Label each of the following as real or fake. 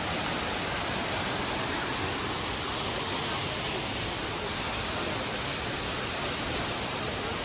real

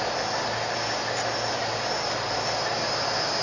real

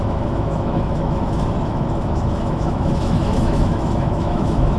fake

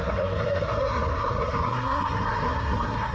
fake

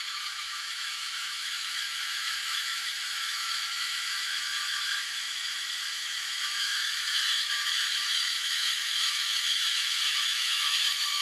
fake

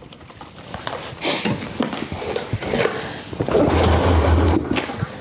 real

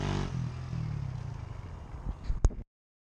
real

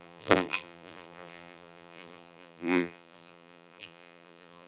fake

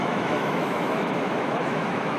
fake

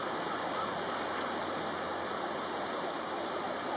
real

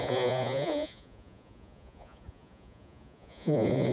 fake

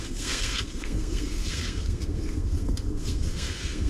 fake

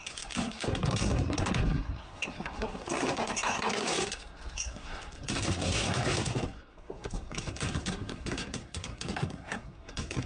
fake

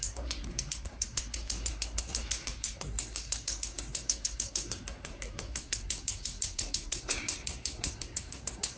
fake